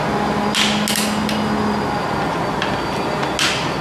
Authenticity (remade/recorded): recorded